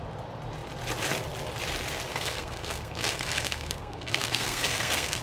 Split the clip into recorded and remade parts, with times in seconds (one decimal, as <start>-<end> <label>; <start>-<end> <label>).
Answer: 0.0-2.1 recorded; 2.1-5.2 remade